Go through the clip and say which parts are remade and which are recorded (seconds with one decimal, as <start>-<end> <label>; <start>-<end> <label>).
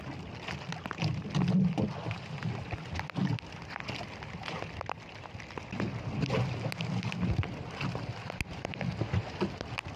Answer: 0.0-10.0 recorded